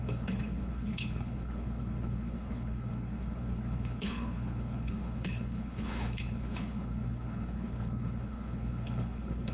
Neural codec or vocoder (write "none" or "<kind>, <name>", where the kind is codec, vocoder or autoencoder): codec, HILCodec